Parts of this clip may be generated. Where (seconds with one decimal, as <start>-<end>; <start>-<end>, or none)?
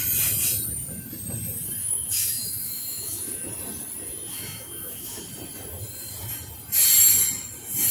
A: 1.8-3.5; 4.3-5.2